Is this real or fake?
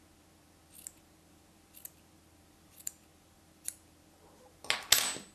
real